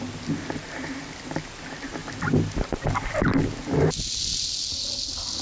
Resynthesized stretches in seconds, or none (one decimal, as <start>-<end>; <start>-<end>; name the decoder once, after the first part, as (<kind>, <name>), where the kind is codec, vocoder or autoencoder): none